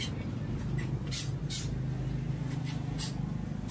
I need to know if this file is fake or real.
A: real